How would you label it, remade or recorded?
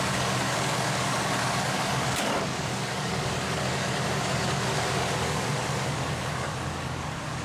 remade